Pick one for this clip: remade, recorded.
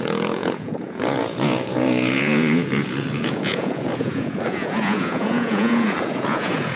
remade